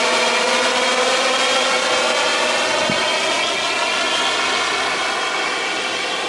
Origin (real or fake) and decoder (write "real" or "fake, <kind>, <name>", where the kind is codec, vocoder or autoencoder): real